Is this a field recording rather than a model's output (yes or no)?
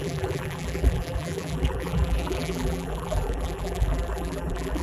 no